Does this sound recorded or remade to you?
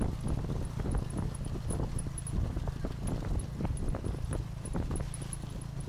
recorded